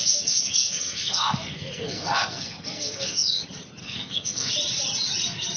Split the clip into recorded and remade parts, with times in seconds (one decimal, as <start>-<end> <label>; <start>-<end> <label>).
0.0-3.4 remade; 3.4-3.8 recorded; 3.8-4.5 remade; 4.5-5.6 recorded